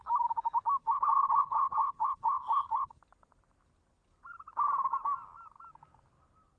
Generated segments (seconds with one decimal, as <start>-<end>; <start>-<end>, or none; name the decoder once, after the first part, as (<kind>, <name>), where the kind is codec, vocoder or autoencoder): 0.8-3.0 (codec, HILCodec)